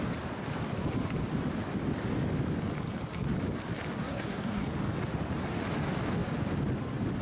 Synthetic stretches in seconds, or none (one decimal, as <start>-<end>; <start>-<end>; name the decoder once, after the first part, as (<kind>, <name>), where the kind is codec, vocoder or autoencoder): 4.0-4.6 (codec, SNAC)